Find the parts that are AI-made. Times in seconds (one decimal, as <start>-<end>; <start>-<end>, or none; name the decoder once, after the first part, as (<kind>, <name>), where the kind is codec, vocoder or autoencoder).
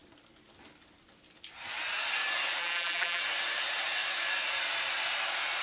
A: 2.6-3.2 (vocoder, BigVGAN v2)